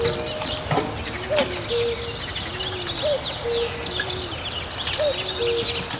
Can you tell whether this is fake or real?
real